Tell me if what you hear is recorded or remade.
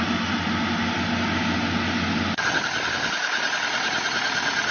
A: recorded